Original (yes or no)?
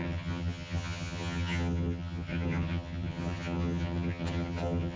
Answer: no